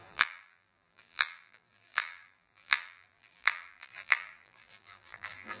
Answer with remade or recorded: remade